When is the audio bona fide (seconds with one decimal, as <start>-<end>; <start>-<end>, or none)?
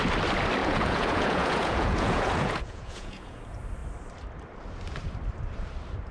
0.0-0.6; 3.4-6.1